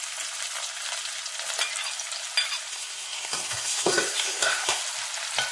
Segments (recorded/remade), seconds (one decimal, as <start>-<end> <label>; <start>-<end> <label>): 0.0-2.7 recorded; 2.7-4.8 remade; 4.8-5.5 recorded